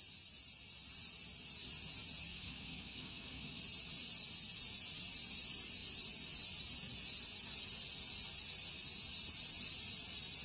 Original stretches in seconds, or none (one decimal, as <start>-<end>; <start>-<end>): 0.0-2.3; 3.6-10.4